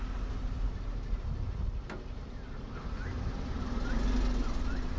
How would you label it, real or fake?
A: real